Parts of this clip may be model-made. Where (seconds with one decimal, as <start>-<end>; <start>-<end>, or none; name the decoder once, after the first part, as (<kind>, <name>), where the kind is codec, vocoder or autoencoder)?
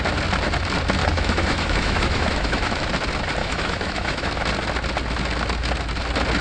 1.0-2.8 (autoencoder, DAC-VAE); 3.4-4.3